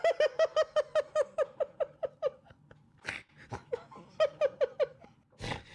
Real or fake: real